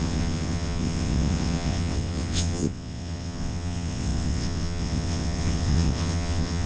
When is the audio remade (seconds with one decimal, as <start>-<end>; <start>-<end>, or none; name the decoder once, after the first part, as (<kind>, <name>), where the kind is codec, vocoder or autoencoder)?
0.0-6.7 (vocoder, WaveNeXt)